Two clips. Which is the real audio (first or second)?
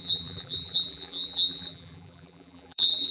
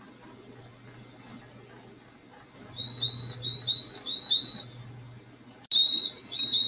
second